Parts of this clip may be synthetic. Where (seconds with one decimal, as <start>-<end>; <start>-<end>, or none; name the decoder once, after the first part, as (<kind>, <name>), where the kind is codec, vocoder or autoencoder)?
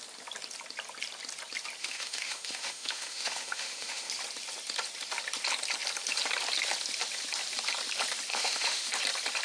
1.8-4.1 (autoencoder, DAC-VAE); 8.3-8.9